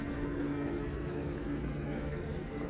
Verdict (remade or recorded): remade